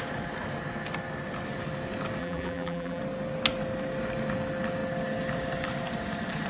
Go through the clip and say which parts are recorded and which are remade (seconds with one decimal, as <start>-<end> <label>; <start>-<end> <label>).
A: 0.0-2.2 recorded; 2.2-3.0 remade; 3.0-6.5 recorded